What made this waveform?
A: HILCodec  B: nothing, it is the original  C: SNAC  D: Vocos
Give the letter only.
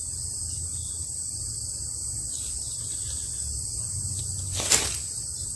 B